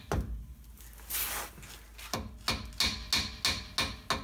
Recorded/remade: recorded